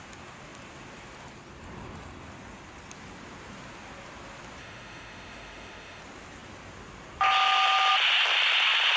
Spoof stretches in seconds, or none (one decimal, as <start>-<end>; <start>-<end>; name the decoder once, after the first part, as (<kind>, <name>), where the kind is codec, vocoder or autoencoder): 4.6-6.0 (autoencoder, DAC-VAE)